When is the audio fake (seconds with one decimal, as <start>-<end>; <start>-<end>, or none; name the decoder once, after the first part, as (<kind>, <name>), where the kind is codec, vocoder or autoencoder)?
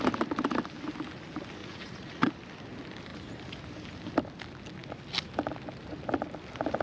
1.6-2.3 (vocoder, Vocos)